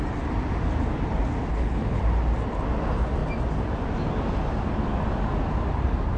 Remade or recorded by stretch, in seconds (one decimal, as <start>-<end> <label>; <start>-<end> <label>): 0.0-1.5 recorded; 1.5-2.0 remade; 2.0-6.2 recorded